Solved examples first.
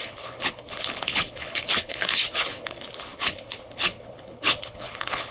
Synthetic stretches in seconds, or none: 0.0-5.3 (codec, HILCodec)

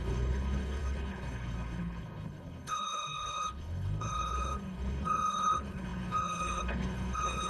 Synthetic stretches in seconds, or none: 0.0-7.5 (codec, HILCodec)